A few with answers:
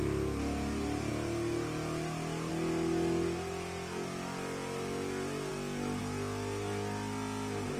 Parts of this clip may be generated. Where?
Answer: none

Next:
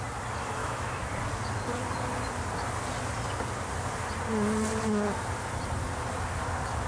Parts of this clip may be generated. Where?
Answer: 0.6-1.1 (autoencoder, DAC-VAE)

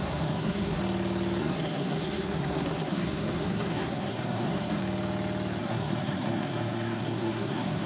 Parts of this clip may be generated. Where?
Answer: 0.0-0.8 (codec, SNAC); 1.4-4.8; 5.6-7.9